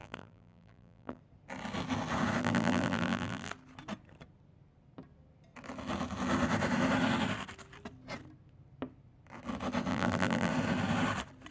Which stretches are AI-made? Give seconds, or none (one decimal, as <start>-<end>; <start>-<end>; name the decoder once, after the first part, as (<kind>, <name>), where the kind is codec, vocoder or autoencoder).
0.0-1.2 (vocoder, BigVGAN v2); 2.4-3.5; 9.9-10.5